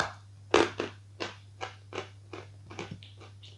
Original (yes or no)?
yes